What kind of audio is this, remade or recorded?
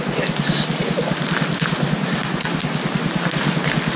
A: recorded